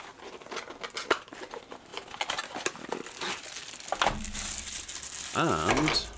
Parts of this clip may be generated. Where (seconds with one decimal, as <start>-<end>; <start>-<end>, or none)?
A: none